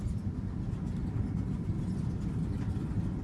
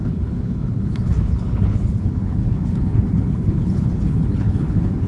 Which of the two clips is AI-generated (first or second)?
second